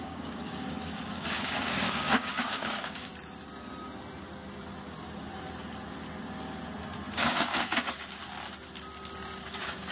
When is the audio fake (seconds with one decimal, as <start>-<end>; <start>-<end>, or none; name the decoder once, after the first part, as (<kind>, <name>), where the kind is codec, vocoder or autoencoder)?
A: 0.0-3.1 (codec, DAC); 7.1-8.2; 9.4-9.9